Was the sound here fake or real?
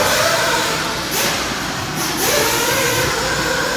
fake